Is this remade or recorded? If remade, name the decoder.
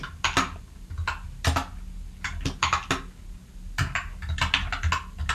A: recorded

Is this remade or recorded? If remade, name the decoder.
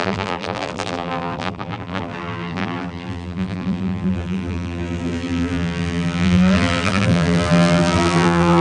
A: remade, vocoder, BigVGAN v2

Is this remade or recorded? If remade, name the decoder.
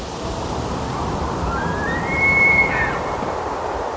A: remade, vocoder, BigVGAN v2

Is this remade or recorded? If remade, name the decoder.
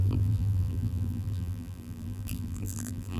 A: remade, vocoder, BigVGAN v2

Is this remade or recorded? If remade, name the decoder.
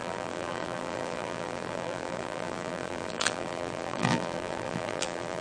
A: remade, vocoder, BigVGAN v2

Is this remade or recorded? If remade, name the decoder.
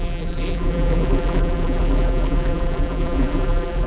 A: remade, vocoder, BigVGAN v2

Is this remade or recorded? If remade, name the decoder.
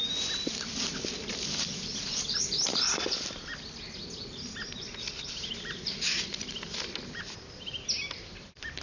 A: remade, vocoder, BigVGAN v2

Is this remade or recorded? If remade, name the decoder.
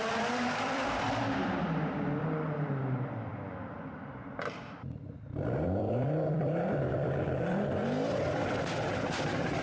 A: remade, vocoder, BigVGAN v2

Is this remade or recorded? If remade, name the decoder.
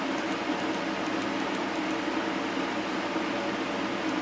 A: recorded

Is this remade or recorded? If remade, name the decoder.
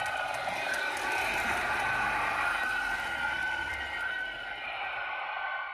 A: recorded